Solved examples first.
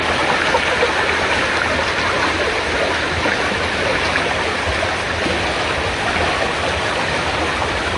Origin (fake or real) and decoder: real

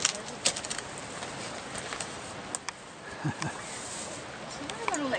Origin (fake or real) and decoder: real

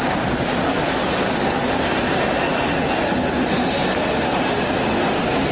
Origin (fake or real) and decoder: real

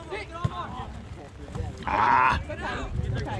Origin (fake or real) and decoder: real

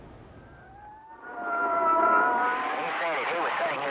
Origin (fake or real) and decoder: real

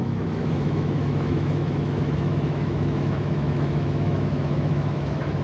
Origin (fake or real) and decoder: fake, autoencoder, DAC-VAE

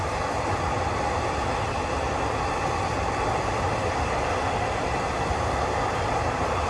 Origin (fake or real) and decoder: real